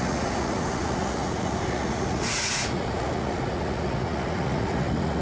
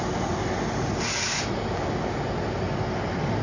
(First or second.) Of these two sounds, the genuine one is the second